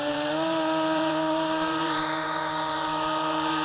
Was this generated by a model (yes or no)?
yes